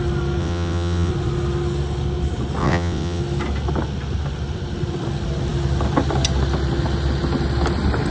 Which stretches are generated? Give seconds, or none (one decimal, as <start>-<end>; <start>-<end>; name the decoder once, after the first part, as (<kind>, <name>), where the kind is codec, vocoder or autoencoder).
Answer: 0.4-1.1 (vocoder, WaveNeXt); 2.6-3.2